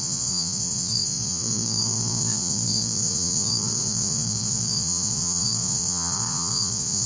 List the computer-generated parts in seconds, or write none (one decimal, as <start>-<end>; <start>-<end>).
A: 0.0-7.1